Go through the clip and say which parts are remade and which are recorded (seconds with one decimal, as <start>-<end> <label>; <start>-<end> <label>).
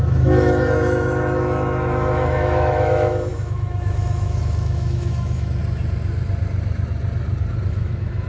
0.0-5.6 remade; 5.6-7.7 recorded; 7.7-8.3 remade